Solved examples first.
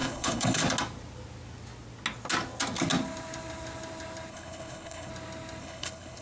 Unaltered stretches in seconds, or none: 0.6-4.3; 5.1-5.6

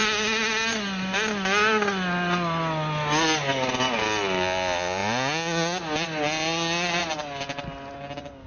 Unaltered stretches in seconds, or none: 0.0-8.5